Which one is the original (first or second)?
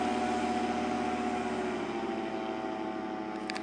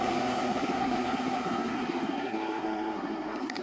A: first